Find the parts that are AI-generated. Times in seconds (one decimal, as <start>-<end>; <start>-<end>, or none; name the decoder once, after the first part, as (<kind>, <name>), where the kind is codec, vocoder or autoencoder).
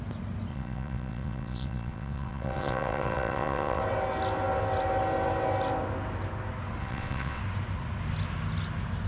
0.5-3.8 (vocoder, WaveNeXt); 6.8-7.4